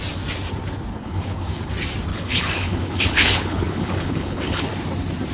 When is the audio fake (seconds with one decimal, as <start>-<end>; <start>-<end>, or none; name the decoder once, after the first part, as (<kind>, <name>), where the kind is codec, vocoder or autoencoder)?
0.9-1.6 (codec, HILCodec); 2.1-4.6